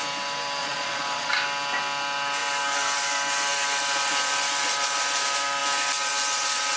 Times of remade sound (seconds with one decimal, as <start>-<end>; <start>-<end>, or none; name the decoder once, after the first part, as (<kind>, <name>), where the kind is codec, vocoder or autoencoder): 0.6-1.3 (vocoder, Vocos)